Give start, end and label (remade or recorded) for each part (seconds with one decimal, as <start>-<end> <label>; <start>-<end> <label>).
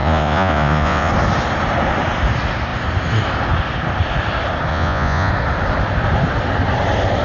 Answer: 0.0-1.1 remade; 1.1-4.7 recorded; 4.7-5.3 remade; 5.3-7.2 recorded